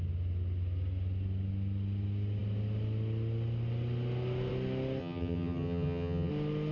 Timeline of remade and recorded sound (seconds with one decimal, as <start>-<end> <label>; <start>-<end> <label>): 0.0-5.0 recorded; 5.0-6.3 remade; 6.3-6.7 recorded